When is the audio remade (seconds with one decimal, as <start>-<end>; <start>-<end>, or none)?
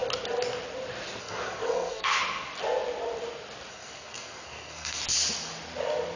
1.2-2.2; 3.7-5.0